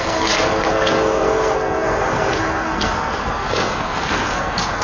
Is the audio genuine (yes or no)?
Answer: no